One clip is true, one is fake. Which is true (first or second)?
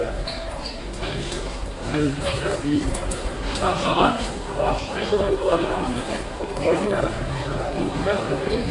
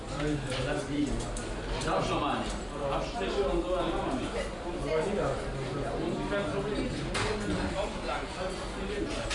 second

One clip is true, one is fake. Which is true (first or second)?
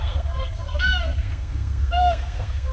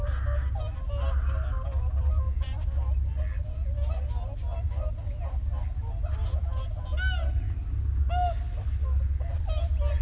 second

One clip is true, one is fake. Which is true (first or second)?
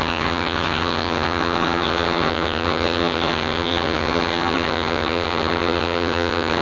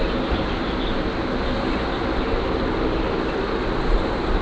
second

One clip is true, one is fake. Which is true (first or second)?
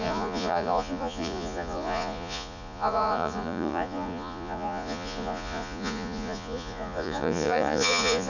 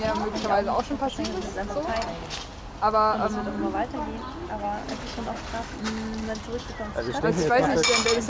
second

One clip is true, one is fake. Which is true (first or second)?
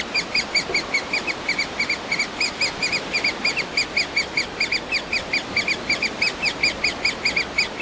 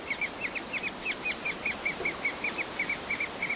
second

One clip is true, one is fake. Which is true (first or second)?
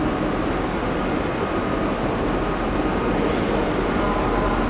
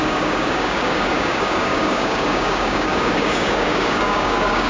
first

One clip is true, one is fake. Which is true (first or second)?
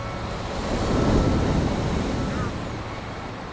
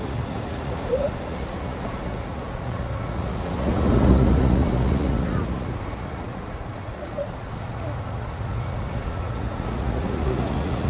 first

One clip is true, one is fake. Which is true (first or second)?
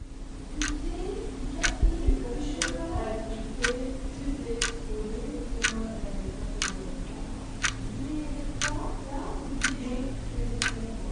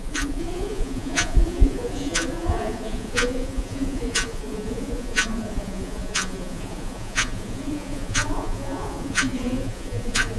first